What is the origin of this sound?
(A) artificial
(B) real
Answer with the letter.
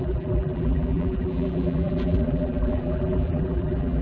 A